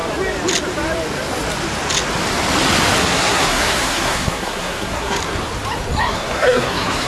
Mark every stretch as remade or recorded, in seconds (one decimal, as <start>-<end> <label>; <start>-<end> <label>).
0.0-3.0 recorded; 3.0-5.2 remade; 5.2-6.0 recorded; 6.0-7.1 remade